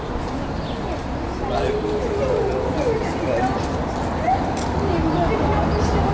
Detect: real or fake real